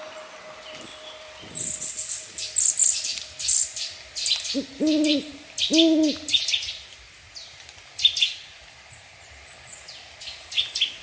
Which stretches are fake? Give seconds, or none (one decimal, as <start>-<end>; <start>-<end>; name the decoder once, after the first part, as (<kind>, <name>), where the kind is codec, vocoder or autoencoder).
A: 2.8-3.6 (vocoder, BigVGAN v2); 5.1-5.6